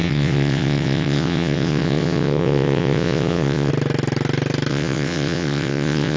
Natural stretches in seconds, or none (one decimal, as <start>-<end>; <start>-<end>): 3.7-4.7